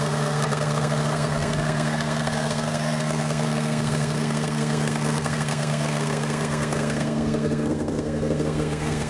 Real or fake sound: fake